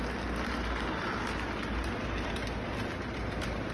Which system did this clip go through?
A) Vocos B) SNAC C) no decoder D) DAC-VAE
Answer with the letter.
C